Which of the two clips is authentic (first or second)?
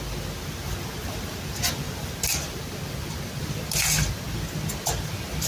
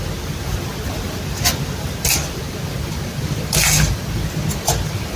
first